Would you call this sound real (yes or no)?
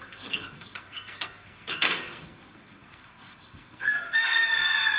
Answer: no